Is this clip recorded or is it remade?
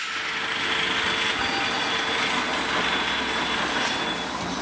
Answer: recorded